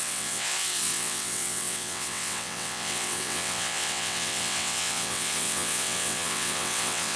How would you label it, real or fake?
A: fake